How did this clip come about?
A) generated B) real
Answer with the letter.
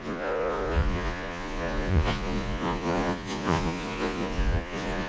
A